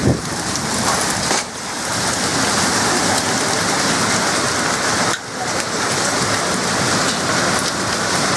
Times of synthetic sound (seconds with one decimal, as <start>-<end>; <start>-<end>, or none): none